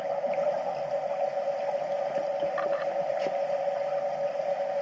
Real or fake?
real